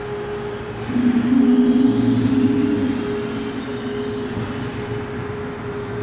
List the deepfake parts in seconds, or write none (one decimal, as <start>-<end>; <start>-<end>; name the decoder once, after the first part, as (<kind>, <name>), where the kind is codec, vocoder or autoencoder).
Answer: none